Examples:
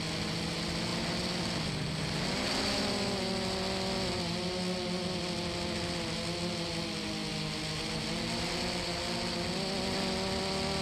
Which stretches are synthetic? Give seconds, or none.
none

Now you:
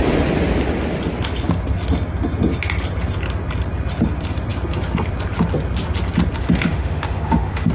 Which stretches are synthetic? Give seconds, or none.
6.4-7.7 (autoencoder, DAC-VAE)

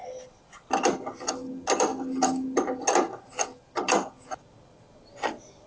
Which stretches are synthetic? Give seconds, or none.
none

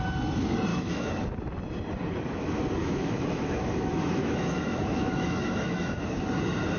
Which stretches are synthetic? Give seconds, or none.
0.7-1.2 (autoencoder, DAC-VAE); 2.8-6.0

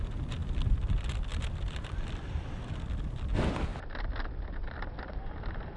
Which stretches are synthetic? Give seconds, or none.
1.3-2.4 (vocoder, BigVGAN v2); 3.7-4.7

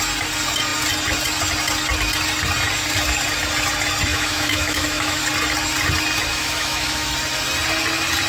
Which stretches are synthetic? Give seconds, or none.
4.1-5.2 (autoencoder, DAC-VAE); 6.3-7.1